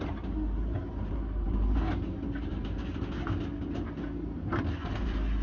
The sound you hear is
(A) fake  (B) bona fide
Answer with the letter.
B